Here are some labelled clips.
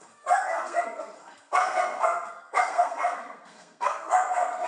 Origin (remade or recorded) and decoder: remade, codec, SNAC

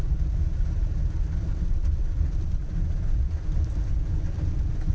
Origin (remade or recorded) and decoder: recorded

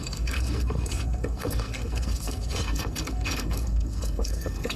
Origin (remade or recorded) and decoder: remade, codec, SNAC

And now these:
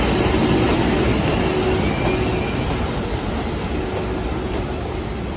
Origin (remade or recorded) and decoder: recorded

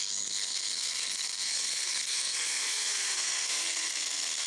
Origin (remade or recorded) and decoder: remade, codec, SNAC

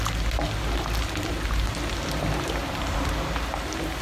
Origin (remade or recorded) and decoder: recorded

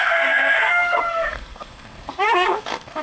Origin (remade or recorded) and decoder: remade, codec, SNAC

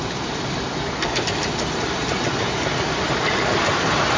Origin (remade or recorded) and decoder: recorded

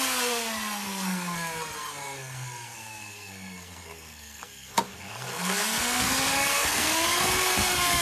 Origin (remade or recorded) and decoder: remade, codec, SNAC